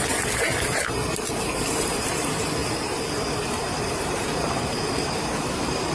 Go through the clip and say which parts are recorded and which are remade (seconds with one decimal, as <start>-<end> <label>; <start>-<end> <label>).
0.0-5.9 remade